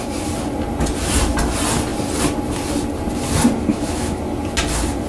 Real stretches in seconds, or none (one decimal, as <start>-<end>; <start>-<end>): 0.0-3.7; 4.2-5.1